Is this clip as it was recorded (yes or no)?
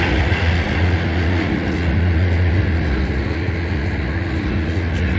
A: no